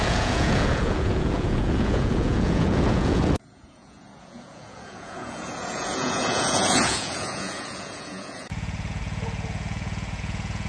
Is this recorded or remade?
remade